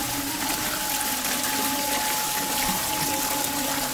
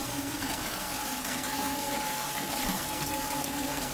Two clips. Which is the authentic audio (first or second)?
first